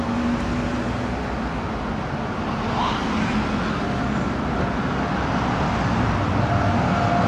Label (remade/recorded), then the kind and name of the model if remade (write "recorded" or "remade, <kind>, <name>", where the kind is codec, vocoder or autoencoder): recorded